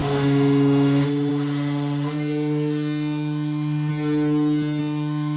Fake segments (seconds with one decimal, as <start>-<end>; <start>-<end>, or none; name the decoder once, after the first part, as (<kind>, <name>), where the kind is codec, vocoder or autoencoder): 0.0-3.9 (autoencoder, DAC-VAE); 4.8-5.4